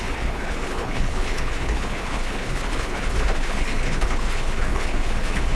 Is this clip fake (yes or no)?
yes